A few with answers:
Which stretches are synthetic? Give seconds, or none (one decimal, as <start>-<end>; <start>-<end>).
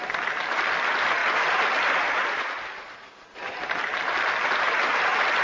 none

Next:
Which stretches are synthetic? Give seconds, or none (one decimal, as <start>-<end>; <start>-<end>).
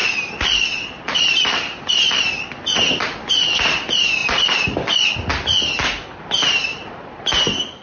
0.0-2.3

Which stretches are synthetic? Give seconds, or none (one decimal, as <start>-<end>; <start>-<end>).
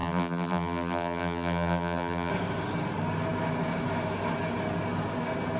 0.0-2.3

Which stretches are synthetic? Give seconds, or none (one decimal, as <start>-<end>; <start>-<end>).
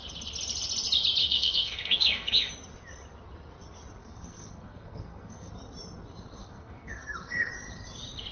1.2-2.5; 4.0-5.5; 6.4-7.5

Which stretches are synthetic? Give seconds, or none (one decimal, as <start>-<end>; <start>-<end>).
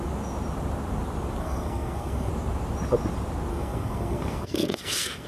1.4-2.3; 3.5-5.3